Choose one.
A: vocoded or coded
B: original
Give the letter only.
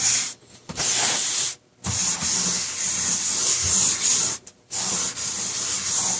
B